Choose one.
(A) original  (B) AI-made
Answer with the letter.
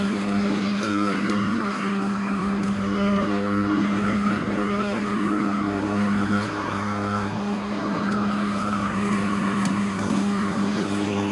B